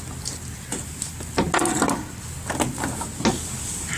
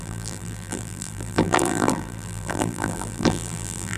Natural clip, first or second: first